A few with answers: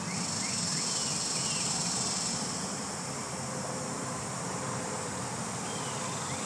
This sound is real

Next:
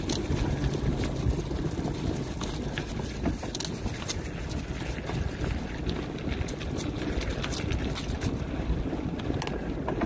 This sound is real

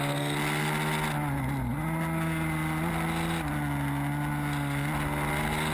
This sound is real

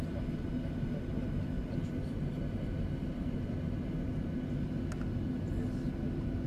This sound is real